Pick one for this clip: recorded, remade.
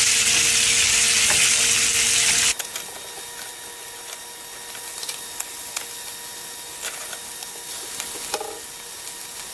recorded